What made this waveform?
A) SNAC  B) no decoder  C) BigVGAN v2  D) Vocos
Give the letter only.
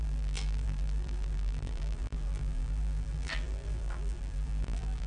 C